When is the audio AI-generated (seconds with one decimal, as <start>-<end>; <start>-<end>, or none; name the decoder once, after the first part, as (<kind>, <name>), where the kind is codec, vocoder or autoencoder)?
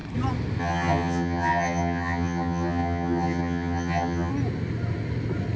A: 0.6-4.3 (vocoder, HiFi-GAN)